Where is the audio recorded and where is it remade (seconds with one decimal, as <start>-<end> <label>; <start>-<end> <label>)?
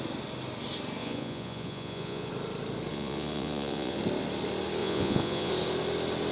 0.0-1.0 recorded; 1.0-2.3 remade; 2.3-2.9 recorded; 2.9-4.0 remade; 4.0-4.8 recorded; 4.8-5.5 remade; 5.5-6.3 recorded